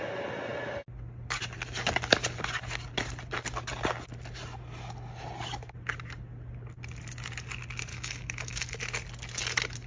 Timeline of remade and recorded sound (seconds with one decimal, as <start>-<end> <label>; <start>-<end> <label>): 0.0-7.9 recorded; 7.9-8.8 remade; 8.8-9.9 recorded